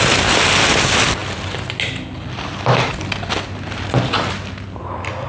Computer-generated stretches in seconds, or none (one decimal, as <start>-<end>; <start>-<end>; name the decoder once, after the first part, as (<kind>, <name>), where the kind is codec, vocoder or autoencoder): none